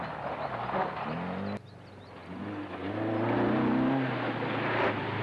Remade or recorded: recorded